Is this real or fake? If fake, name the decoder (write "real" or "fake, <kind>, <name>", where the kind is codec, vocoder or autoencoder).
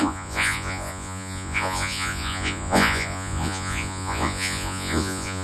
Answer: fake, vocoder, Vocos